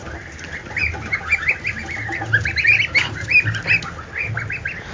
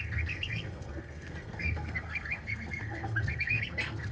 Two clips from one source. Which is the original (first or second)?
first